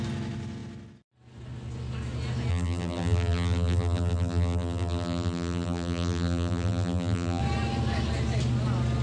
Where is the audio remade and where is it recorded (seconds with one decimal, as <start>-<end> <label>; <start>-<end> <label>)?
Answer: 0.0-2.5 recorded; 2.5-7.4 remade; 7.4-9.0 recorded